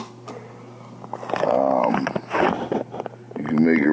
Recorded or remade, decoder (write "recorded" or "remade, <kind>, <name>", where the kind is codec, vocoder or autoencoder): recorded